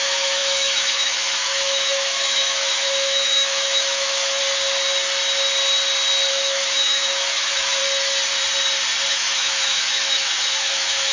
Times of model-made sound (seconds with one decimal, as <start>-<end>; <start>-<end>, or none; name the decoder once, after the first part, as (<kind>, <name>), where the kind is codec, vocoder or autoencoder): 0.0-4.4 (autoencoder, DAC-VAE); 6.3-7.8; 9.1-11.1